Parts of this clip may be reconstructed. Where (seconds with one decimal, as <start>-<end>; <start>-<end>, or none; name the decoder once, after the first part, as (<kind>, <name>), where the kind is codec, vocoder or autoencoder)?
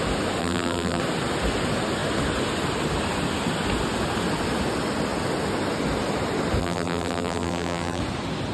0.4-1.0 (vocoder, BigVGAN v2); 6.6-8.0